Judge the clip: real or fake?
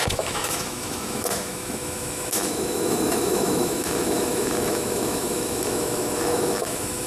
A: fake